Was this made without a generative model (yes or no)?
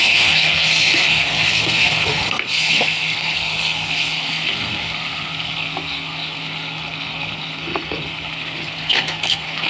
no